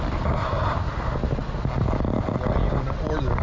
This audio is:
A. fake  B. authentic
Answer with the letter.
B